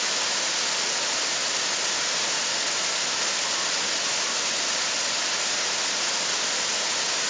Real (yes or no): yes